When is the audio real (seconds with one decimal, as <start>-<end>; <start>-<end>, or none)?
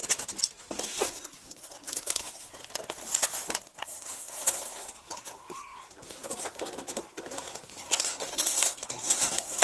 0.0-0.6; 2.6-3.8